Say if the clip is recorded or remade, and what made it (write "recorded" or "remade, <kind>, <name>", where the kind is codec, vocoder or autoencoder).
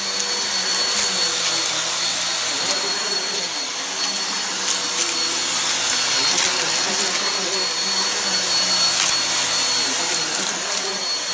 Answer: recorded